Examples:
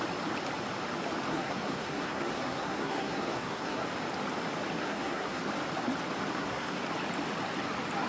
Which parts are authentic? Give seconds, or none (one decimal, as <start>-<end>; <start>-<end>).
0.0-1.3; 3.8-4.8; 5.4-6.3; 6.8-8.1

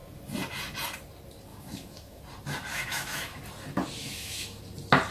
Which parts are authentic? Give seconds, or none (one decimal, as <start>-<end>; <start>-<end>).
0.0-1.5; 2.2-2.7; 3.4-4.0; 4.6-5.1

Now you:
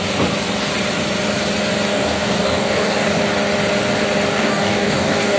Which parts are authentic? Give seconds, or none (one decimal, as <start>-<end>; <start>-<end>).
0.0-1.9; 3.2-4.3